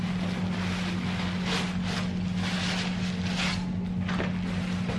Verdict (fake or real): real